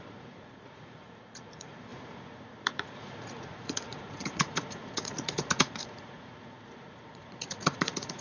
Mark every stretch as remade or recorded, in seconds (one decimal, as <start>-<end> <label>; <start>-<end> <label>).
0.0-8.2 remade